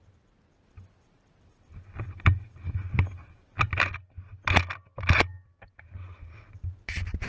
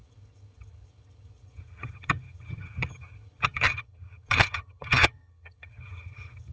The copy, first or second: second